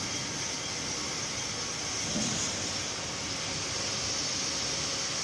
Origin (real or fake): real